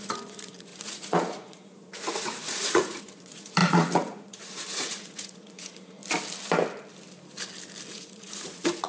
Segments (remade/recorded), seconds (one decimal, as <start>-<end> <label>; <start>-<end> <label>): 0.0-6.0 remade; 6.0-7.9 recorded; 7.9-8.9 remade